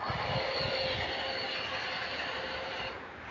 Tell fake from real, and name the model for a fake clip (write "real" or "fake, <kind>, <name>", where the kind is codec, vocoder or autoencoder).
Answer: real